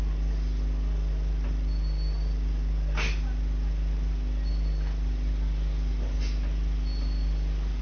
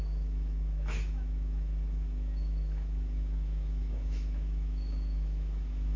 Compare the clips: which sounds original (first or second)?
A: first